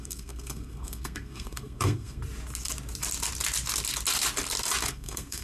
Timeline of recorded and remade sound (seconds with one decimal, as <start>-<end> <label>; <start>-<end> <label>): 0.0-2.2 remade; 2.2-4.9 recorded; 4.9-5.4 remade